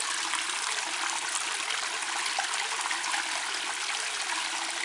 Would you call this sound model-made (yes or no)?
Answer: no